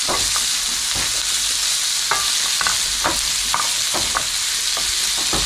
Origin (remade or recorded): recorded